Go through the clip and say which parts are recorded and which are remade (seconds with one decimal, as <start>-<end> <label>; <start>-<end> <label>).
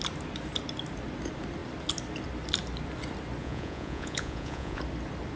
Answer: 0.0-3.4 recorded; 3.4-4.8 remade; 4.8-5.4 recorded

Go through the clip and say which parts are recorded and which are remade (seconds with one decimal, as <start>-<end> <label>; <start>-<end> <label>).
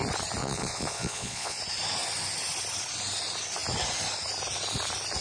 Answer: 0.0-0.4 recorded; 0.4-1.6 remade; 1.6-5.2 recorded